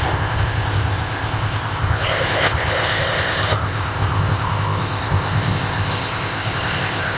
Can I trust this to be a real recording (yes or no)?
no